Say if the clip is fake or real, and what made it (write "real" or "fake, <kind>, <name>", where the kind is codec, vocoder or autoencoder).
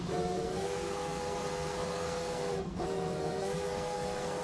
fake, codec, SNAC